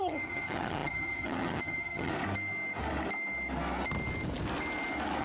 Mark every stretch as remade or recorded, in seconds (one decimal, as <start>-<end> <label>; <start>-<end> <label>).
0.0-2.1 remade; 2.1-5.2 recorded